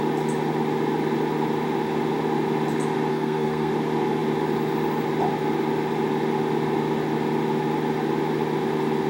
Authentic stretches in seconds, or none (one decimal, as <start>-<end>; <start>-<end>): 0.0-3.1; 3.7-9.1